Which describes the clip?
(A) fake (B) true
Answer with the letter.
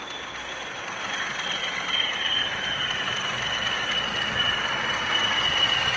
B